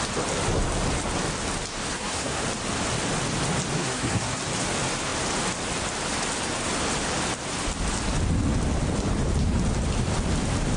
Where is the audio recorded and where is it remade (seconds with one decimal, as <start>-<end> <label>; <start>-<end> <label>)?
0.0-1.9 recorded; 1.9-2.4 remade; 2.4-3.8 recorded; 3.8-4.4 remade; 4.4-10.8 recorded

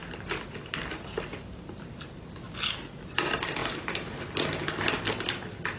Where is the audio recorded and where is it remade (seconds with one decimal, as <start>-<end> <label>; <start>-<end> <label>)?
0.0-5.8 recorded

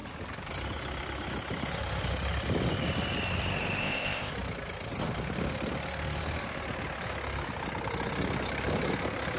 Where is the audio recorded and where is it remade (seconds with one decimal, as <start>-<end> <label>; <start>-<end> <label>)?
0.0-3.8 recorded; 3.8-4.3 remade; 4.3-9.4 recorded

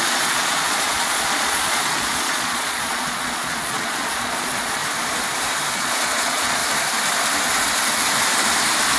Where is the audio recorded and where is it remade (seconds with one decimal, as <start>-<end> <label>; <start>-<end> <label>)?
0.0-4.8 remade; 4.8-5.7 recorded; 5.7-6.6 remade; 6.6-9.0 recorded

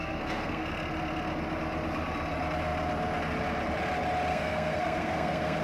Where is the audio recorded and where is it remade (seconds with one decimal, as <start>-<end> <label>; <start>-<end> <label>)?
0.0-0.7 remade; 0.7-4.3 recorded; 4.3-5.6 remade

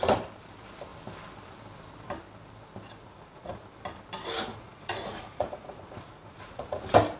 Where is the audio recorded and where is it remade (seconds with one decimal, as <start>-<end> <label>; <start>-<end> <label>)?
0.0-3.0 recorded; 3.0-3.6 remade; 3.6-4.5 recorded; 4.5-6.8 remade; 6.8-7.2 recorded

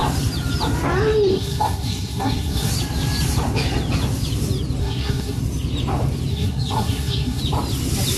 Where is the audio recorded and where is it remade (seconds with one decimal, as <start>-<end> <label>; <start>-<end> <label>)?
0.0-1.3 recorded; 1.3-2.7 remade; 2.7-4.8 recorded; 4.8-5.4 remade; 5.4-6.3 recorded; 6.3-7.4 remade; 7.4-8.2 recorded